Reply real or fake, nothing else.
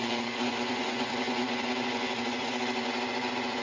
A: fake